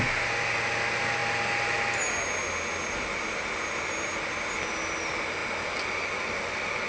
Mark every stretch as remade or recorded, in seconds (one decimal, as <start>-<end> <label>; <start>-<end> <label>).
0.0-6.9 recorded